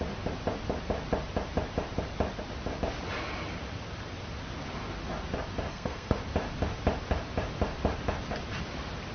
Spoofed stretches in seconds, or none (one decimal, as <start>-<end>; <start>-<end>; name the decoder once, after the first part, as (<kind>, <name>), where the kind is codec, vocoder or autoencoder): 5.7-6.2 (codec, SNAC)